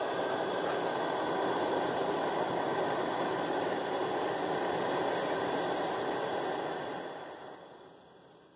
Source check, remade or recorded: recorded